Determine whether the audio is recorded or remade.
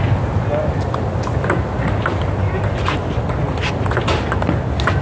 recorded